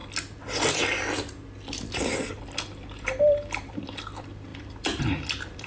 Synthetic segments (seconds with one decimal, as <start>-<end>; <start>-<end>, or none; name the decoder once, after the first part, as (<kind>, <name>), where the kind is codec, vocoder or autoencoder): 2.4-5.7 (vocoder, BigVGAN v2)